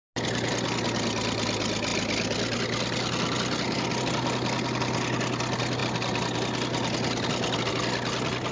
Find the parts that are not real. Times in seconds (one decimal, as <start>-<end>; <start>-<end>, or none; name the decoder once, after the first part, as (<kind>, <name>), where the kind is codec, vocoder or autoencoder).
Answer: none